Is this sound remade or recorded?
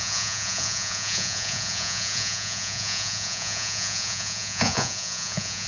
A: remade